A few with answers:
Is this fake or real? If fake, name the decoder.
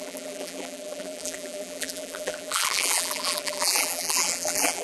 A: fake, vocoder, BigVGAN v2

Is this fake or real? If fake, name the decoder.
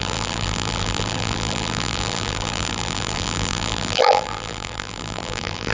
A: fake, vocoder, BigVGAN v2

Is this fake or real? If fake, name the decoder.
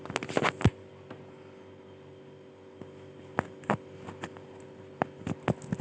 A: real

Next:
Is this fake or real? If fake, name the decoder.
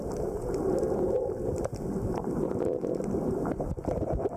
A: real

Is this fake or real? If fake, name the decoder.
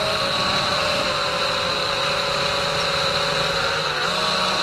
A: fake, vocoder, BigVGAN v2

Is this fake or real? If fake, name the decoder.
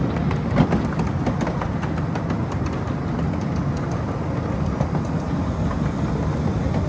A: real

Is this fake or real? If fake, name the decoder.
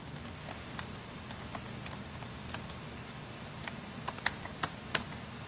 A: real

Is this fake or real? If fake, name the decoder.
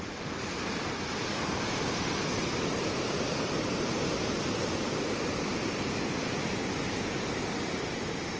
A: fake, vocoder, BigVGAN v2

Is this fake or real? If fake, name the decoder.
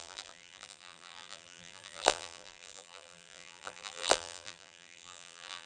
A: fake, vocoder, BigVGAN v2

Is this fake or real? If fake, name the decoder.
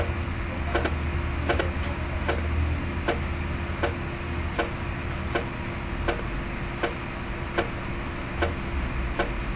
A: real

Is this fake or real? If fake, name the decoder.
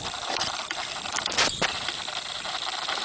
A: fake, vocoder, BigVGAN v2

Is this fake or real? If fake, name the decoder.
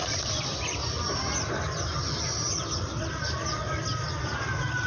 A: fake, vocoder, BigVGAN v2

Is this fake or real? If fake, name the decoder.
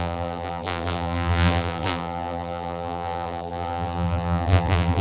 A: fake, vocoder, BigVGAN v2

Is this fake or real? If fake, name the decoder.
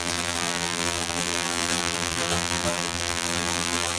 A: fake, vocoder, BigVGAN v2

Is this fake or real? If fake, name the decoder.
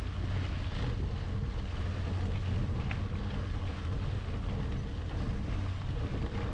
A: real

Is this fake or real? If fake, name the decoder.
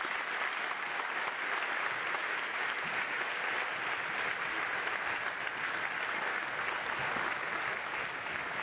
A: real